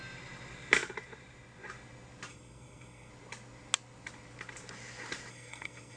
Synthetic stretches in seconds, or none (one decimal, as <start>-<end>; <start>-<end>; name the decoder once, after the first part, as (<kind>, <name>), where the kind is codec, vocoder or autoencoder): 2.3-3.1 (codec, SNAC); 5.3-6.0